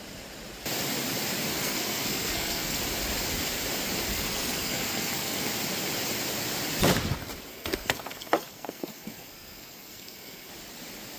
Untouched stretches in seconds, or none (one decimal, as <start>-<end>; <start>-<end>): 0.0-1.5; 2.8-4.1; 5.5-7.5; 10.5-11.2